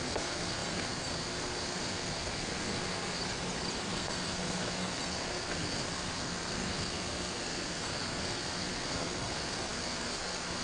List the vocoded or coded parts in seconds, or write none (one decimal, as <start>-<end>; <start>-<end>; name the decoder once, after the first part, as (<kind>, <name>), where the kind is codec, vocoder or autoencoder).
0.0-3.2 (codec, SNAC); 3.9-10.6